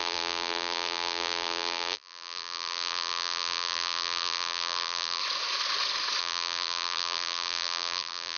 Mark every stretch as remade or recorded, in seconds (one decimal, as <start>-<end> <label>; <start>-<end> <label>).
0.0-5.2 remade; 5.2-6.2 recorded; 6.2-8.4 remade